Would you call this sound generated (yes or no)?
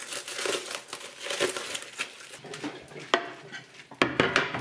no